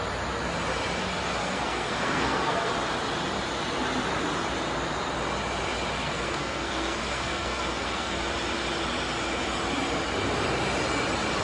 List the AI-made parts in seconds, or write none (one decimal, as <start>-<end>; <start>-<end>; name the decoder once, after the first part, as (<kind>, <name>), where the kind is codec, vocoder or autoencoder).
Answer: 1.4-2.7 (codec, SNAC); 6.0-8.2